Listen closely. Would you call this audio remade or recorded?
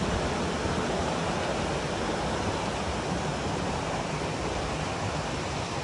recorded